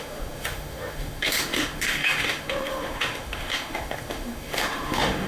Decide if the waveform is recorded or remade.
remade